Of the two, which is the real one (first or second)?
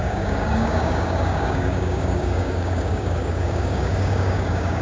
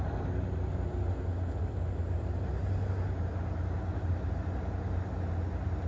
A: second